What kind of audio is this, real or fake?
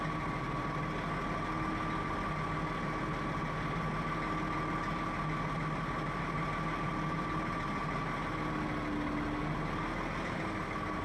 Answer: real